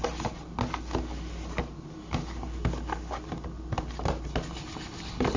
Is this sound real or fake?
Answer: real